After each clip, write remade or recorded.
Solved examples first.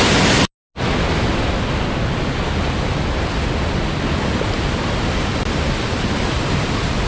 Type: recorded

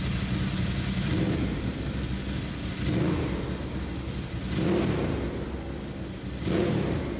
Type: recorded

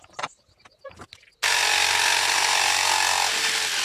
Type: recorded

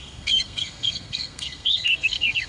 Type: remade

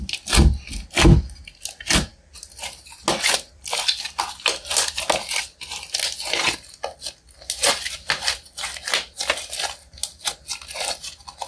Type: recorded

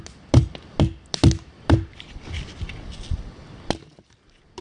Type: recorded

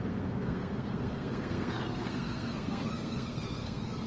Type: remade